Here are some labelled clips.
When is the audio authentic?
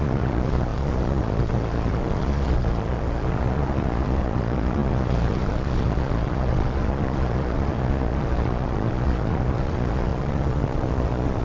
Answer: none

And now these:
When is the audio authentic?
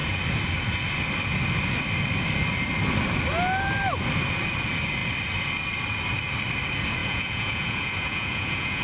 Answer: 0.0-7.0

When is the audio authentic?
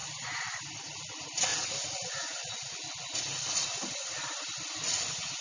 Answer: 0.6-5.4